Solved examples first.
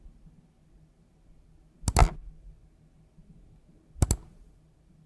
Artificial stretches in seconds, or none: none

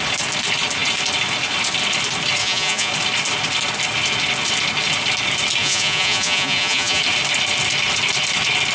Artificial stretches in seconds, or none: 2.4-2.9 (vocoder, Vocos); 5.6-7.0

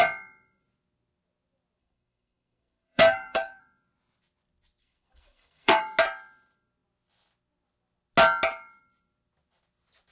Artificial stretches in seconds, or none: 1.8-3.6 (codec, SNAC); 4.8-5.8

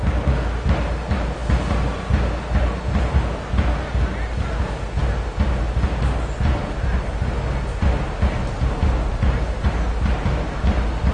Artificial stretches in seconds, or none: none